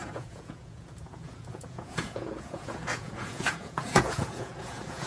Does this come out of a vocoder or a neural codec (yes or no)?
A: yes